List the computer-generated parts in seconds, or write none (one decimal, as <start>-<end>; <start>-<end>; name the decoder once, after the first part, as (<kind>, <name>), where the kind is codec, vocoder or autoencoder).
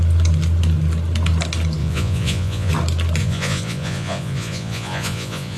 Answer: 1.8-2.7 (vocoder, Vocos); 3.2-5.6